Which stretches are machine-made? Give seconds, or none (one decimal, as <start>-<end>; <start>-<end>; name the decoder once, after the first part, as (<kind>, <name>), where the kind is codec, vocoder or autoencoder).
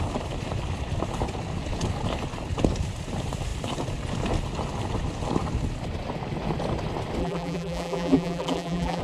7.2-9.0 (vocoder, BigVGAN v2)